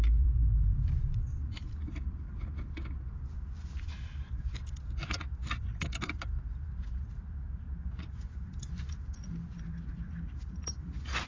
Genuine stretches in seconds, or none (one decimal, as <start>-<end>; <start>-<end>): 0.0-5.4; 6.2-11.3